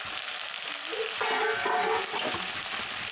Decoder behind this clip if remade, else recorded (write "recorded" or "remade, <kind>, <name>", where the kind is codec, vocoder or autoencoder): recorded